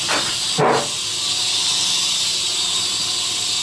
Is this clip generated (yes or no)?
no